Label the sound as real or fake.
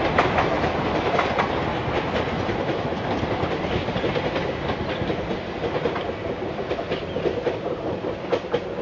real